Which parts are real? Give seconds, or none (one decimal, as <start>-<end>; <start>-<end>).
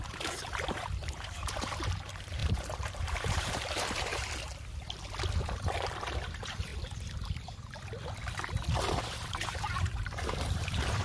4.1-5.4; 6.7-9.0